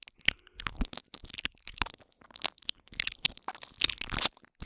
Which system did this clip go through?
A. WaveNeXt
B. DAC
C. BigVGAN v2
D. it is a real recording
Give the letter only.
D